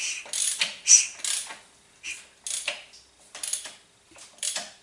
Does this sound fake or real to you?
real